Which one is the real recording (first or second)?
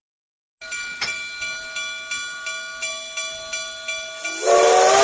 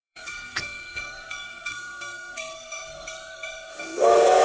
first